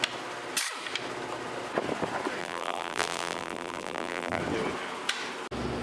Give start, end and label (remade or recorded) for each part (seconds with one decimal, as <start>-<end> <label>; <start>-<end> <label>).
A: 0.0-2.4 recorded; 2.4-4.4 remade; 4.4-5.8 recorded